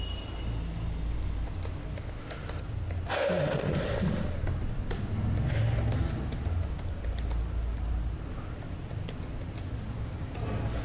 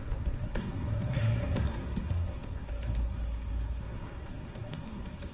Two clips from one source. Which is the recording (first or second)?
first